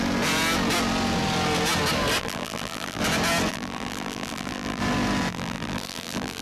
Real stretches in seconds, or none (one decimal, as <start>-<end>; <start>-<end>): 0.0-2.2; 3.0-3.5; 4.8-5.3